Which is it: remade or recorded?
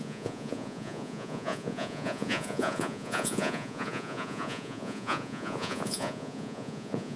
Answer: remade